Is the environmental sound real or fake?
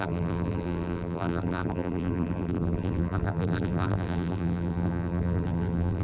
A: fake